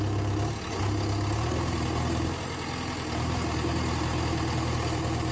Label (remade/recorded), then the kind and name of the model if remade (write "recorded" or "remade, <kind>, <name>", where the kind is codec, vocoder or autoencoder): recorded